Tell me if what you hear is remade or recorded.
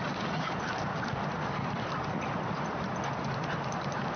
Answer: recorded